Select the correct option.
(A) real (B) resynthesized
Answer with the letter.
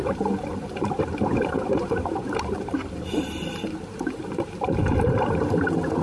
B